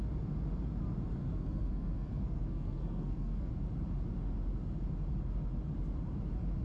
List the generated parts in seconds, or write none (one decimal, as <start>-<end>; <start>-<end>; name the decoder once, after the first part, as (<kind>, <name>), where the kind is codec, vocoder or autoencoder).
1.2-3.5 (codec, SNAC)